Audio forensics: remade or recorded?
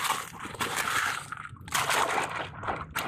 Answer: recorded